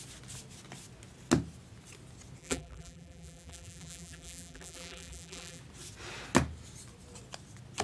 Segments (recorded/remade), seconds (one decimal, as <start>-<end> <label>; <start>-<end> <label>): 0.0-2.4 recorded; 2.4-5.6 remade; 5.6-7.8 recorded

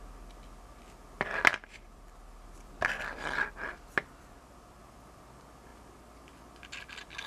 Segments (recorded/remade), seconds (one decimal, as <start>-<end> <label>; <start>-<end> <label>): 0.0-1.5 recorded; 1.5-4.8 remade; 4.8-7.3 recorded

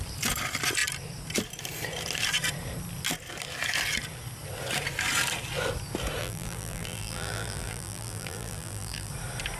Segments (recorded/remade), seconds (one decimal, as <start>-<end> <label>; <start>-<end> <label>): 0.0-6.2 recorded; 6.2-9.1 remade; 9.1-9.6 recorded